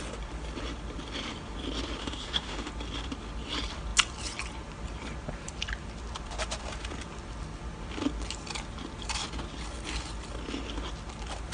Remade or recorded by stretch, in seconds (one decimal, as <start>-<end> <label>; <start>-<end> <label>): 0.0-2.0 recorded; 2.0-2.7 remade; 2.7-11.5 recorded